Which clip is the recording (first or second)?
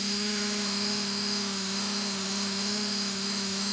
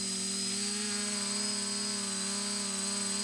second